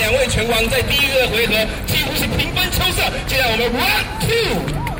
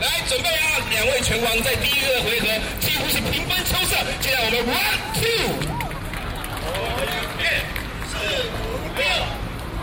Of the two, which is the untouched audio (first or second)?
first